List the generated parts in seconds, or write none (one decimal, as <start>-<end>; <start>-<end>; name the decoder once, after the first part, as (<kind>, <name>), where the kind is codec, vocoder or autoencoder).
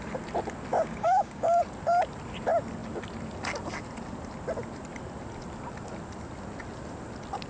0.7-1.6 (codec, DAC)